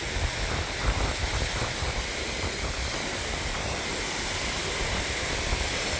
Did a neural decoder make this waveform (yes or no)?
no